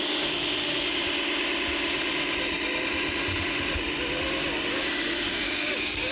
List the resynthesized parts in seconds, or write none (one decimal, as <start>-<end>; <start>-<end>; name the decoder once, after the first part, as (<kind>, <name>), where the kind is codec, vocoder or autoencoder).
0.0-1.0 (codec, DAC); 4.7-6.1